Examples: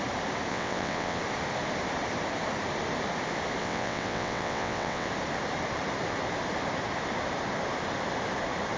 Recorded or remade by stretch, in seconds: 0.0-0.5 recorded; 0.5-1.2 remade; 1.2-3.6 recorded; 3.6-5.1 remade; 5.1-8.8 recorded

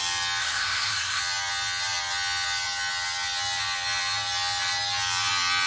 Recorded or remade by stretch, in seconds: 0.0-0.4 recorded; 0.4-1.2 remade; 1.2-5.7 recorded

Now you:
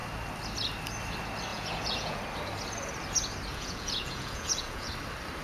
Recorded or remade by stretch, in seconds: 0.0-1.5 recorded; 1.5-2.2 remade; 2.2-3.5 recorded; 3.5-4.9 remade; 4.9-5.4 recorded

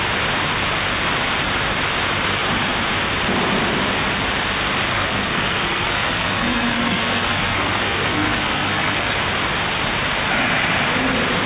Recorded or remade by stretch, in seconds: 0.0-4.9 recorded; 4.9-9.2 remade; 9.2-11.5 recorded

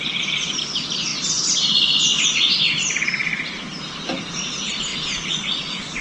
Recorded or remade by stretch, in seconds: 0.0-1.1 remade; 1.1-2.0 recorded; 2.0-3.2 remade; 3.2-3.8 recorded; 3.8-4.9 remade; 4.9-6.0 recorded

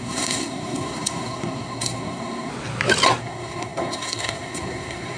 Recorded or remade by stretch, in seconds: 0.0-2.5 remade; 2.5-3.2 recorded; 3.2-5.2 remade